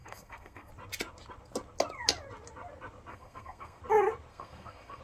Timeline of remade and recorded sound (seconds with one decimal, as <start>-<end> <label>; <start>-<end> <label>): 0.0-0.7 remade; 0.7-3.1 recorded; 3.1-3.8 remade; 3.8-4.3 recorded; 4.3-5.0 remade